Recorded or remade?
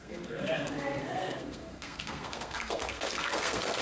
remade